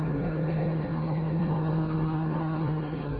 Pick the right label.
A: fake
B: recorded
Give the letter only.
A